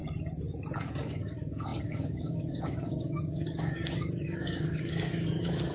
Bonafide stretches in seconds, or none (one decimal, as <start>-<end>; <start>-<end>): 0.0-0.8